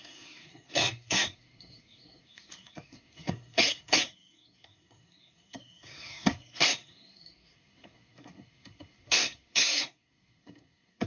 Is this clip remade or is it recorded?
remade